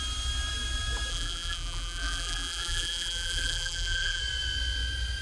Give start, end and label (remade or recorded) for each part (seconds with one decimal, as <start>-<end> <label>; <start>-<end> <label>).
0.0-1.1 recorded; 1.1-4.2 remade; 4.2-5.2 recorded